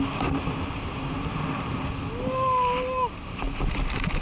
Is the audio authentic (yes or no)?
yes